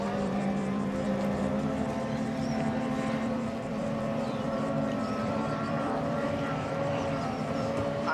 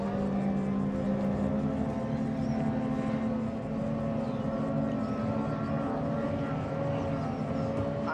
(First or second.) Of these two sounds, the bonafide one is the second